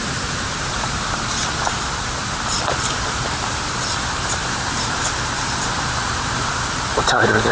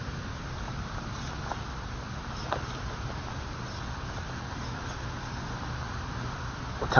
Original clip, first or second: second